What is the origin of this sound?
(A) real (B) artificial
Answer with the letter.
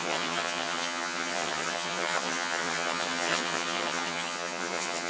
B